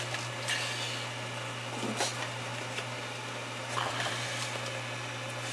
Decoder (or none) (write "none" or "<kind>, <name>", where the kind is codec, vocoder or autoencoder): none